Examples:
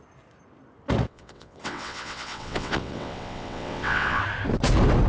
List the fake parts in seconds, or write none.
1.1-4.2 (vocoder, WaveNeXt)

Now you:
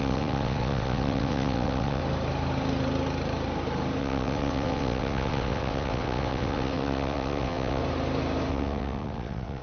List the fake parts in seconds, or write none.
0.0-2.0 (vocoder, WaveNeXt); 4.0-7.8; 8.5-9.6

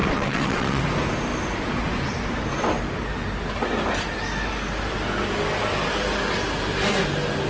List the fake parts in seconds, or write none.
0.0-0.8 (vocoder, WaveNeXt)

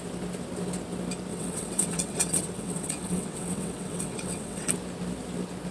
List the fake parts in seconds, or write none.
1.3-4.7 (vocoder, WaveNeXt)

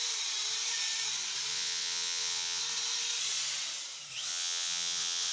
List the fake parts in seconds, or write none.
1.5-2.6 (vocoder, WaveNeXt); 4.3-5.3

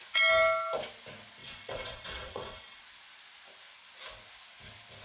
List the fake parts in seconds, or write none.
1.4-2.8 (vocoder, WaveNeXt)

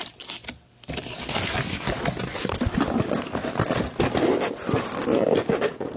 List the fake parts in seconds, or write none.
none

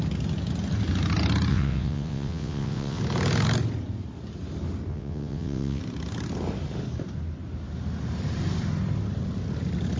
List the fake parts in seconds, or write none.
1.5-3.0 (vocoder, WaveNeXt); 4.9-5.8